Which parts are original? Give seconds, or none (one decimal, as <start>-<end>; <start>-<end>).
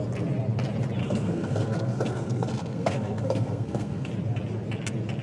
0.0-1.0; 4.1-5.2